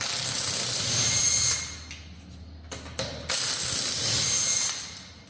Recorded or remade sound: recorded